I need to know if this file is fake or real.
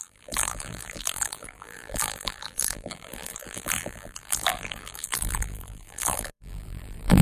fake